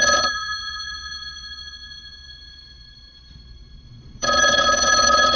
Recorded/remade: remade